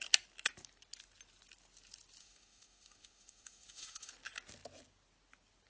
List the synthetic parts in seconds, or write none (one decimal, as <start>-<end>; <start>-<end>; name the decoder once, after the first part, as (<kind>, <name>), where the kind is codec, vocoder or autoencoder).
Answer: 2.2-4.1 (autoencoder, DAC-VAE)